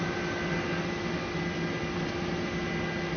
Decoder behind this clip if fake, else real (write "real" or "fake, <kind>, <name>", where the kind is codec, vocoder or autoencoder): real